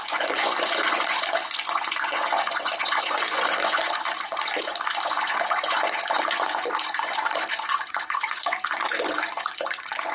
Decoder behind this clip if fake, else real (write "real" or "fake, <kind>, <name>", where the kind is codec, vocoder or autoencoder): fake, vocoder, Vocos